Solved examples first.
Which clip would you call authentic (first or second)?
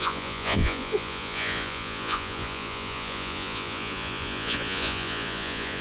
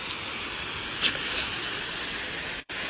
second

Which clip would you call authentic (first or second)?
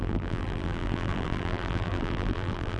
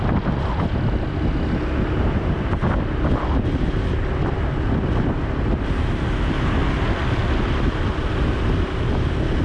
second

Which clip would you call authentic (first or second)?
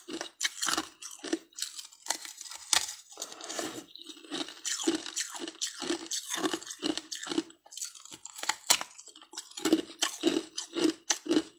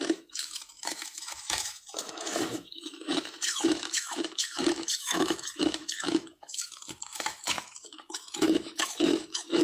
first